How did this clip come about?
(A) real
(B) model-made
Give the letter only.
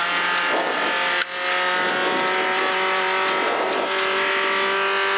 A